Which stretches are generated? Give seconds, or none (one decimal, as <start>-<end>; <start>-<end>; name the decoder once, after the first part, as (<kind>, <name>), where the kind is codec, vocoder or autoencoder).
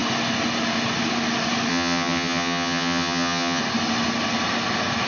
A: 1.7-3.6 (vocoder, HiFi-GAN)